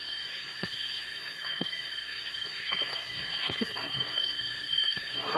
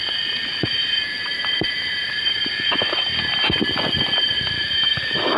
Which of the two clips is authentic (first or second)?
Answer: second